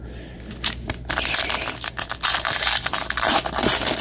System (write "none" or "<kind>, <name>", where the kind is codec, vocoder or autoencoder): none